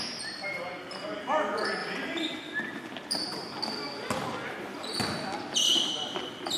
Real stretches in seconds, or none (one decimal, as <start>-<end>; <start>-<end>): 0.0-1.8; 4.5-6.6